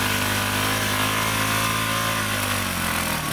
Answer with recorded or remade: recorded